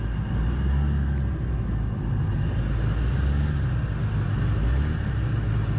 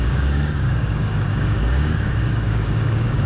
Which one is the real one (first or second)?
first